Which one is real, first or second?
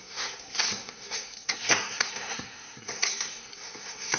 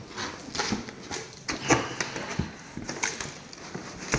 second